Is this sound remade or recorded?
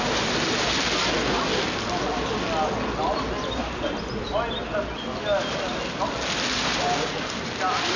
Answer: recorded